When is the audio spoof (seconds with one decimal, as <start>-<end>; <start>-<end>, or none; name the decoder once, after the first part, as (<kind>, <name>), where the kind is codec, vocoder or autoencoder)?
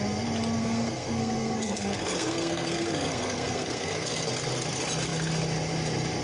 0.6-4.3 (codec, SNAC)